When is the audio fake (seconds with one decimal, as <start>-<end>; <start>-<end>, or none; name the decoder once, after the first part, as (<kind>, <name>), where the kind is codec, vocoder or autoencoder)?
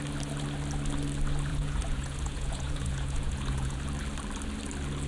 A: 1.5-3.8 (vocoder, Vocos)